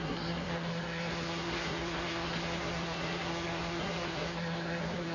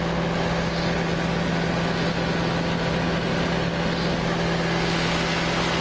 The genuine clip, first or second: second